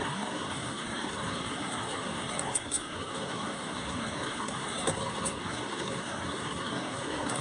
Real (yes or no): no